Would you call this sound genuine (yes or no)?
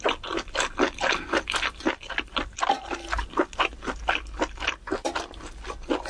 yes